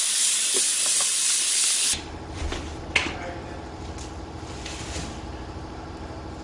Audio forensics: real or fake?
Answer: real